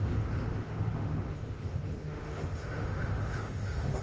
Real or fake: fake